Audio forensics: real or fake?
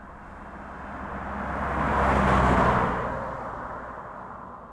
real